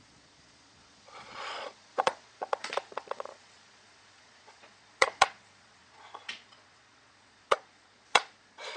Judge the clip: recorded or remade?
remade